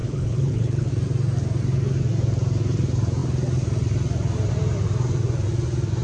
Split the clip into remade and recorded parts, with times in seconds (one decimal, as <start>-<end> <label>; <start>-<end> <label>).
0.0-0.9 remade; 0.9-6.0 recorded

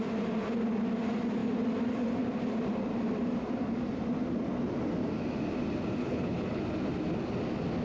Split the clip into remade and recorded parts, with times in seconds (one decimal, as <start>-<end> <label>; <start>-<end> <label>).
0.0-6.0 recorded; 6.0-6.6 remade; 6.6-7.8 recorded

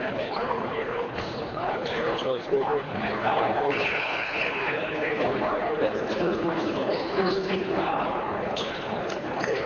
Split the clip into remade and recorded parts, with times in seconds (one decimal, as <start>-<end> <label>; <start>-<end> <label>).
0.0-9.7 remade

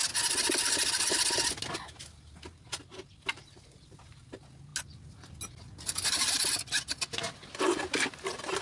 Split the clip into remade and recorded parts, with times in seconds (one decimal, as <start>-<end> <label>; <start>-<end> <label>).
0.0-8.6 recorded